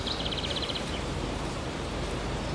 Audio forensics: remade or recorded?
remade